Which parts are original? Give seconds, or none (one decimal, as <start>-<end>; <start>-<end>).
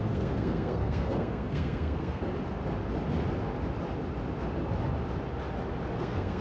2.2-6.0